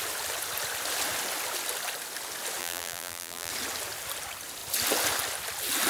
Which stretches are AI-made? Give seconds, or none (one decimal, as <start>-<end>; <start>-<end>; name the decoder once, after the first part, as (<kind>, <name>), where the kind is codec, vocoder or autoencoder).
2.6-3.5 (vocoder, BigVGAN v2)